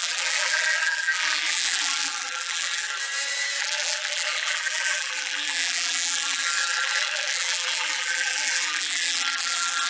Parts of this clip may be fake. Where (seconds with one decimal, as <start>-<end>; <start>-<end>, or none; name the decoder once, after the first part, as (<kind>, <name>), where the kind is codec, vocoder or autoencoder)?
0.0-3.0 (vocoder, BigVGAN v2); 3.6-9.9